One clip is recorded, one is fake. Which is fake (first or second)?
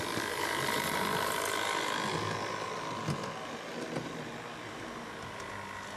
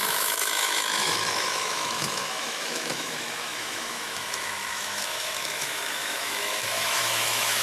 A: second